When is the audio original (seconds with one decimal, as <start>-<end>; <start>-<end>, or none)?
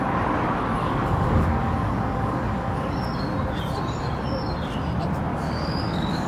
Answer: 0.0-0.8; 3.0-5.3